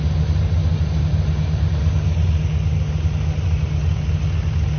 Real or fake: real